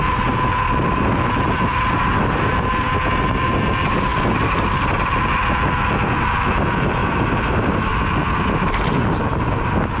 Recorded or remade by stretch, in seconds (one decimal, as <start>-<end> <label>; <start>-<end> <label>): 0.0-7.0 recorded; 7.0-7.9 remade; 7.9-10.0 recorded

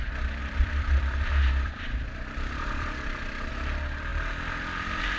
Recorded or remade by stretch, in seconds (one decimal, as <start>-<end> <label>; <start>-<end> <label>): 0.0-0.4 recorded; 0.4-3.5 remade; 3.5-5.2 recorded

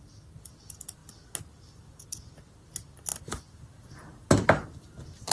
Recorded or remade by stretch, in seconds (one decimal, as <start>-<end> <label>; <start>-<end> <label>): 0.0-5.3 recorded